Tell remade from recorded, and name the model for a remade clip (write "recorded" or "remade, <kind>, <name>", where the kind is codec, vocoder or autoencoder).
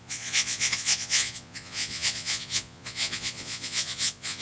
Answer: remade, vocoder, Vocos